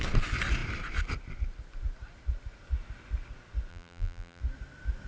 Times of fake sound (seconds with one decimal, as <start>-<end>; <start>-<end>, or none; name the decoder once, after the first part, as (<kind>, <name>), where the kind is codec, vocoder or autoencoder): 3.7-4.4 (vocoder, BigVGAN v2)